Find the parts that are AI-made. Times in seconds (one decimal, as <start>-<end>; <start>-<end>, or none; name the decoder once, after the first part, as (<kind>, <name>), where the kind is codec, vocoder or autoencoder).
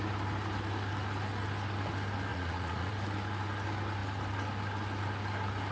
2.3-2.9 (vocoder, Vocos)